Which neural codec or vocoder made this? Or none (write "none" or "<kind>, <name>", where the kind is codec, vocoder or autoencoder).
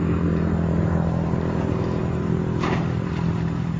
vocoder, BigVGAN v2